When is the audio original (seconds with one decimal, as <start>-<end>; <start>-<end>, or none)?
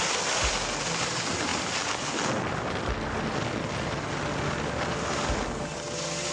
0.0-6.3